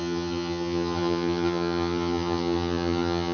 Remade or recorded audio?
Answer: remade